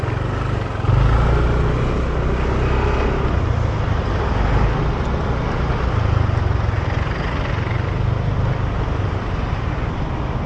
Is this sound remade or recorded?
recorded